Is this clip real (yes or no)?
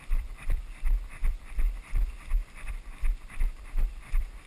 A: no